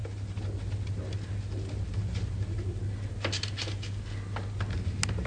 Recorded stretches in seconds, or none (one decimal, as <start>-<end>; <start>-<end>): 0.0-5.3